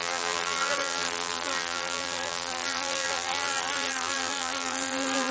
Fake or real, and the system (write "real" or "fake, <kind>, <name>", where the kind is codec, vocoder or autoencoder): fake, vocoder, BigVGAN v2